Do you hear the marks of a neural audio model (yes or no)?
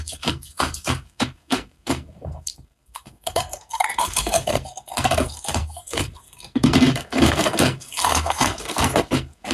yes